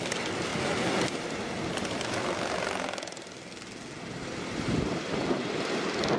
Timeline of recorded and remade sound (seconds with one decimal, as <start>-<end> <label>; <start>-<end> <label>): 0.0-6.2 recorded